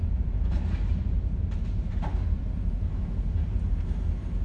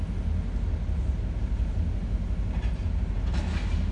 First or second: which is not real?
first